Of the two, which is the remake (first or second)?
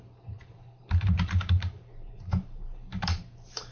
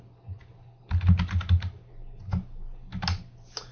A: first